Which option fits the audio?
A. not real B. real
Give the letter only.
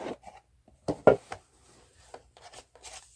A